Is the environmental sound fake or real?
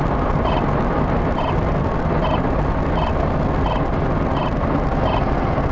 real